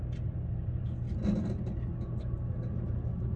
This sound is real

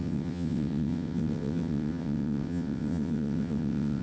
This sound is fake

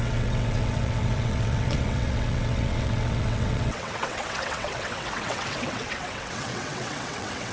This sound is fake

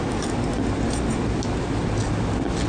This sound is real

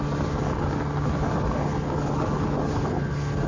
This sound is real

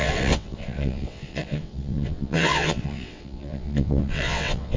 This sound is fake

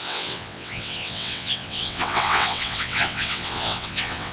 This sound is fake